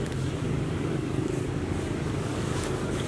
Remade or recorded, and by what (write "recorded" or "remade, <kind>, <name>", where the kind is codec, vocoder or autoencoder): remade, codec, DAC